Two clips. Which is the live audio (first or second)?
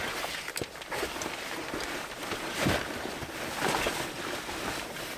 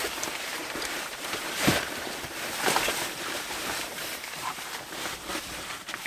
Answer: first